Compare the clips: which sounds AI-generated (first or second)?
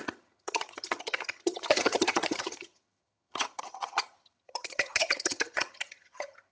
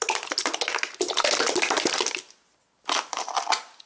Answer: first